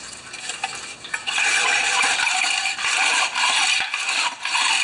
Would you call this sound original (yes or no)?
yes